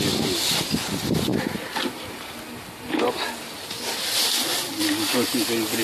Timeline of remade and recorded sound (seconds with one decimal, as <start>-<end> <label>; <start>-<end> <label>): 0.0-5.8 recorded